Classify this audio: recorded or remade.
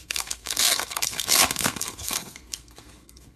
remade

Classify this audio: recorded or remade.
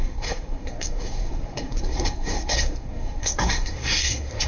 remade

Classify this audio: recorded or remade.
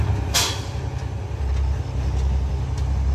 recorded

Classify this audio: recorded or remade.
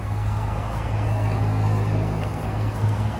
remade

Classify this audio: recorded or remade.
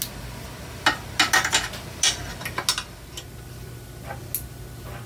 recorded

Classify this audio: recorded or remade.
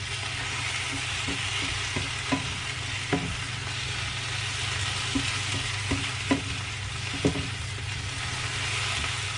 recorded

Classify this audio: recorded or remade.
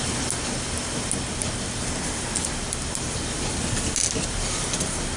recorded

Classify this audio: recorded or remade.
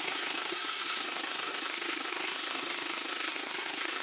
remade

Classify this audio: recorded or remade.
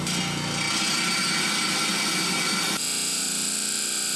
recorded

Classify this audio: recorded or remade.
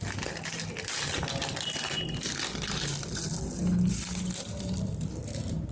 recorded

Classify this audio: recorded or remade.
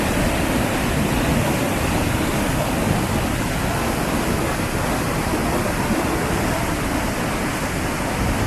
recorded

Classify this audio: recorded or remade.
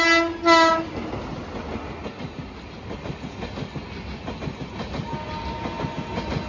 recorded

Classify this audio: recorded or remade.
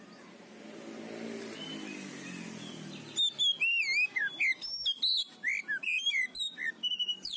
recorded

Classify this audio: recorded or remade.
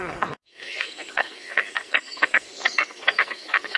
remade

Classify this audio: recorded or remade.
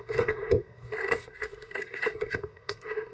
remade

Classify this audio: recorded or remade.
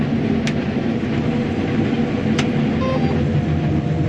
recorded